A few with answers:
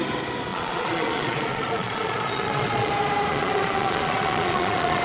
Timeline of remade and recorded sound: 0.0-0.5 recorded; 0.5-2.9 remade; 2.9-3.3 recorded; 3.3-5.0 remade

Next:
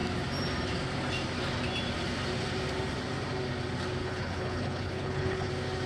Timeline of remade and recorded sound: 0.0-4.0 recorded; 4.0-5.5 remade; 5.5-5.9 recorded

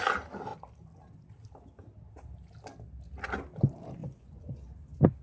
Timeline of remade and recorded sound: 0.0-4.0 recorded; 4.0-4.6 remade; 4.6-5.2 recorded

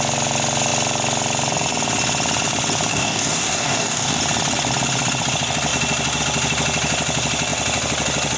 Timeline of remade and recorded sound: 0.0-2.9 recorded; 2.9-4.2 remade; 4.2-8.4 recorded

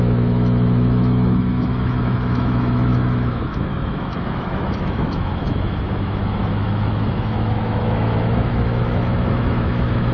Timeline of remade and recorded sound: 0.0-10.1 remade